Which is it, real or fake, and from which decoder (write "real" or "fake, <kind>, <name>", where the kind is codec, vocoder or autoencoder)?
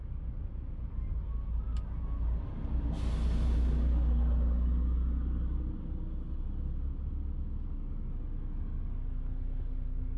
real